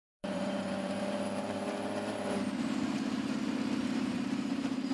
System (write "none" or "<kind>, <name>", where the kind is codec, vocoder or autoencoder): vocoder, BigVGAN v2